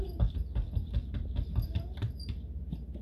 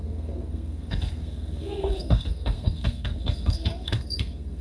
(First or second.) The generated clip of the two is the second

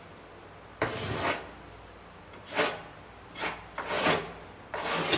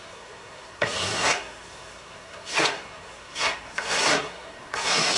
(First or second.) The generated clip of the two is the second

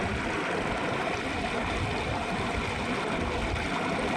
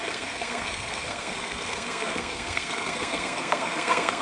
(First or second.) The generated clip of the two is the second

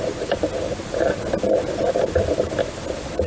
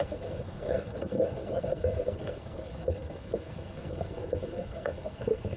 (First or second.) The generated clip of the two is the second